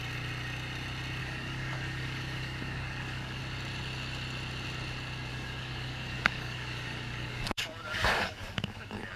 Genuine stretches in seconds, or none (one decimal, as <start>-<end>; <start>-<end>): 0.0-1.2; 3.4-5.3